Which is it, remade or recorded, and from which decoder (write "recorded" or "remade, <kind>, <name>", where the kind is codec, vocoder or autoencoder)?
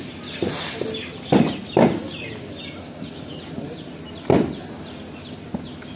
recorded